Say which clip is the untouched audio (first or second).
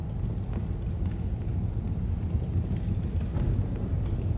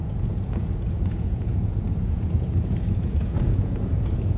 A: first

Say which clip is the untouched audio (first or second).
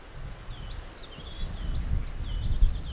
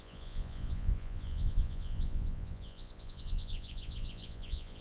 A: first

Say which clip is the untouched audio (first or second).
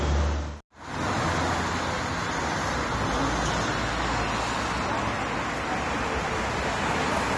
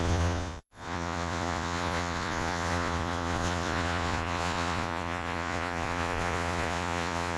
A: first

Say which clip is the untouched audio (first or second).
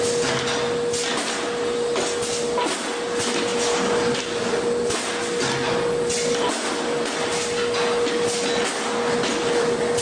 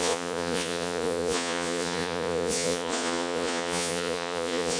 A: first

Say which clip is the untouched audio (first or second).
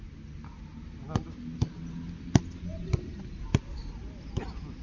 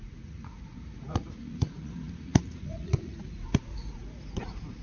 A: first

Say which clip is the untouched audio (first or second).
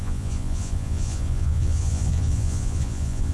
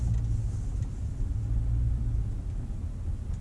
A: second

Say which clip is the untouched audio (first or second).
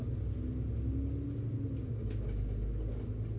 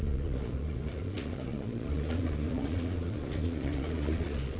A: first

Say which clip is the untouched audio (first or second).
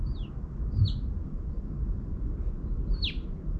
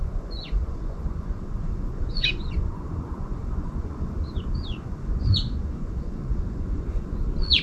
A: first